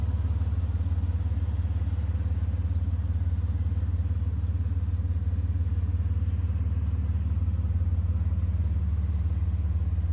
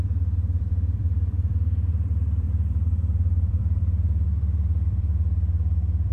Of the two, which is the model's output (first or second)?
second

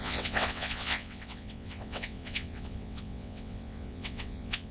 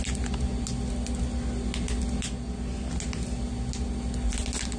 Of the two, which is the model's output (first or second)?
first